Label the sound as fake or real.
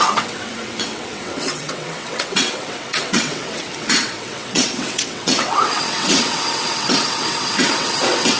fake